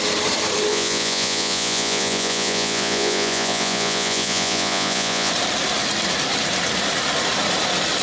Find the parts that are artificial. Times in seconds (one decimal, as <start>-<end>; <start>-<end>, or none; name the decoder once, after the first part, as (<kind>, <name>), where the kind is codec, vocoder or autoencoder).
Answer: 0.7-5.3 (vocoder, Vocos)